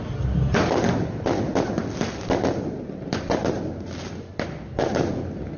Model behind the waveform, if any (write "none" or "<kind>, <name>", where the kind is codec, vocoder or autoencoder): none